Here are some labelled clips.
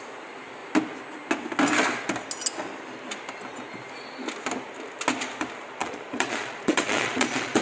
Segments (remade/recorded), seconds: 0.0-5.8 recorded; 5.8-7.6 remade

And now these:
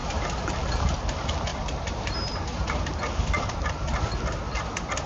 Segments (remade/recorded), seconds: 0.0-0.5 remade; 0.5-1.5 recorded; 1.5-3.7 remade; 3.7-5.1 recorded

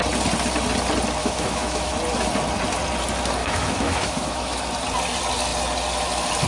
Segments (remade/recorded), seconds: 0.0-1.2 recorded; 1.2-1.9 remade; 1.9-3.4 recorded; 3.4-4.7 remade; 4.7-6.5 recorded

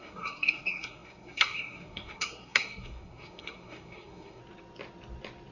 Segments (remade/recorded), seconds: 0.0-4.4 remade; 4.4-5.5 recorded

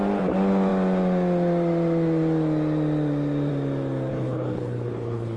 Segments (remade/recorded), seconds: 0.0-4.1 recorded; 4.1-5.4 remade